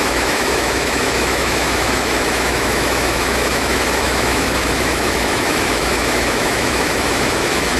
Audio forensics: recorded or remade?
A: remade